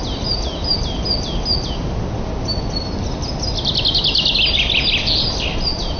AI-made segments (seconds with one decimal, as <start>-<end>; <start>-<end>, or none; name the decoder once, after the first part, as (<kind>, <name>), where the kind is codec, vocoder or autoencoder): none